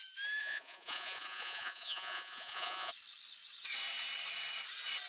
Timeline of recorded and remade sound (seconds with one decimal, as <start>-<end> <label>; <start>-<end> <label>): 0.0-0.4 recorded; 0.4-2.9 remade; 2.9-5.1 recorded